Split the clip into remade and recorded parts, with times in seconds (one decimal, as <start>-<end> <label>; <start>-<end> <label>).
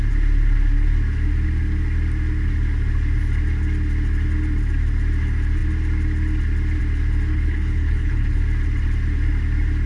0.0-7.3 recorded; 7.3-8.4 remade; 8.4-9.9 recorded